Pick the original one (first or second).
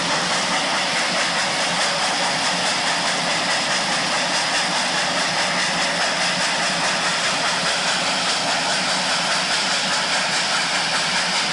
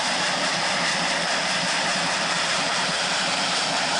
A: first